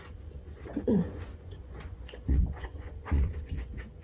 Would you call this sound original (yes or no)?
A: no